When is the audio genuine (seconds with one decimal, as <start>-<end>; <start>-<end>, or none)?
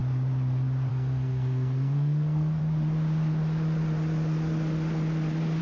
0.0-0.9; 2.6-5.6